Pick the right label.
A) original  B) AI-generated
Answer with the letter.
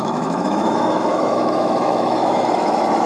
B